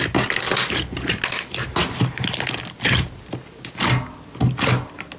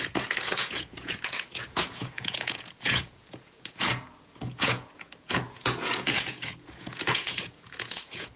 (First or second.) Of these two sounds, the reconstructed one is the second